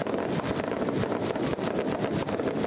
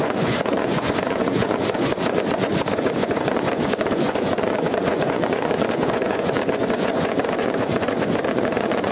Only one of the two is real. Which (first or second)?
first